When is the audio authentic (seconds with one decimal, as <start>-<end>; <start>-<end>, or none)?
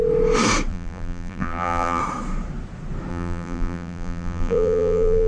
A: 0.0-0.7; 2.0-3.1